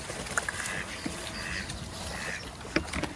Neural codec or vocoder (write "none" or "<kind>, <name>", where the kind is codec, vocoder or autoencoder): none